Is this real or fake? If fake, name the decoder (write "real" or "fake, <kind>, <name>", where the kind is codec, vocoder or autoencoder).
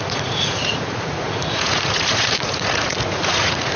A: fake, vocoder, Vocos